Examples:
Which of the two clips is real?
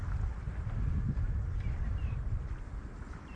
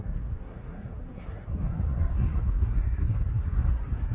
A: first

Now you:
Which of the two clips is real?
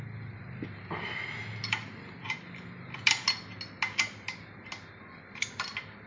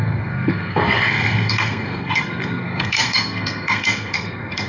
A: first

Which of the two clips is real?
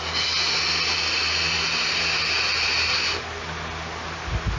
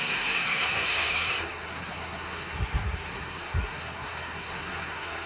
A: first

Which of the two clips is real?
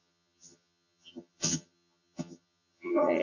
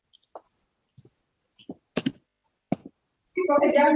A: second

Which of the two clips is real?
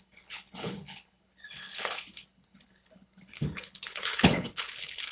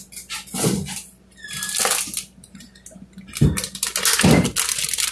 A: second